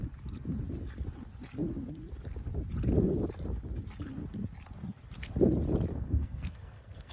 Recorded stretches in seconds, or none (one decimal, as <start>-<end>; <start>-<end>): 0.0-5.9